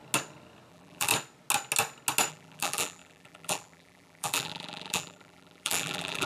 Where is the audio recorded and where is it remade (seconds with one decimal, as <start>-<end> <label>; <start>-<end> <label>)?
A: 0.0-0.7 recorded; 0.7-1.1 remade; 1.1-2.3 recorded; 2.3-6.3 remade